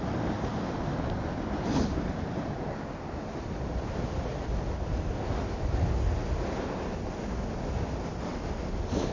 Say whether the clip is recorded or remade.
recorded